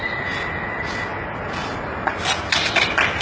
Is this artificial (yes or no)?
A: no